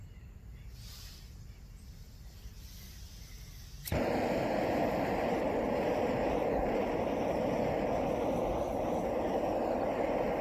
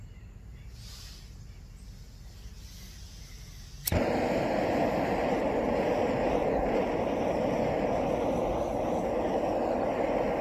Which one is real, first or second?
second